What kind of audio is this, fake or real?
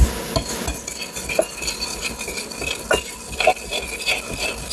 real